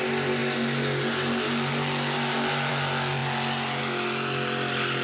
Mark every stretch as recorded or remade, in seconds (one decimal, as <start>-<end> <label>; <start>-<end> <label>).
0.0-5.0 recorded